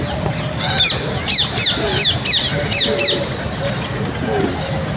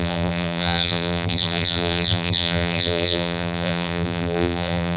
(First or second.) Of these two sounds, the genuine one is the first